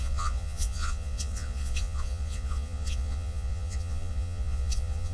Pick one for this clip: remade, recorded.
remade